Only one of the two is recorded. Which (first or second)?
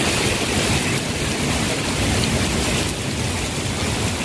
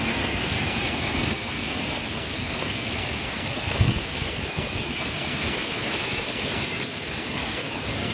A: first